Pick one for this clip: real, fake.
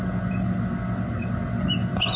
real